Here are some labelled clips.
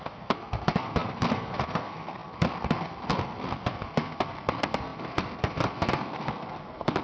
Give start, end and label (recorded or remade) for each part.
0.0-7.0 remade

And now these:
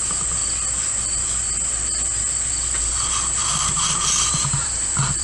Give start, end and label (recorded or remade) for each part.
0.0-0.4 remade; 0.4-2.8 recorded; 2.8-5.2 remade

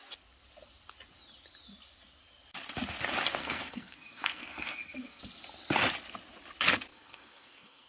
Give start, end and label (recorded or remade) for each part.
0.0-3.4 recorded; 3.4-5.2 remade; 5.2-6.9 recorded; 6.9-7.9 remade

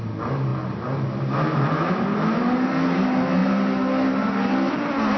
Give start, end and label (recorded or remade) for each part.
0.0-5.2 recorded

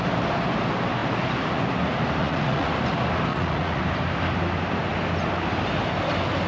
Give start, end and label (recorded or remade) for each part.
0.0-2.2 recorded; 2.2-2.7 remade; 2.7-3.3 recorded; 3.3-3.8 remade; 3.8-6.5 recorded

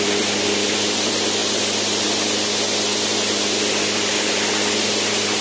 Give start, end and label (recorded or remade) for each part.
0.0-5.4 recorded

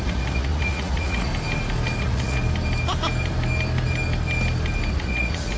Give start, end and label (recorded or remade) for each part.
0.0-1.3 remade; 1.3-2.0 recorded; 2.0-2.4 remade; 2.4-4.9 recorded; 4.9-5.6 remade

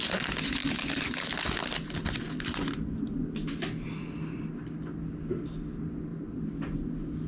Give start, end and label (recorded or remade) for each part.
0.0-7.3 recorded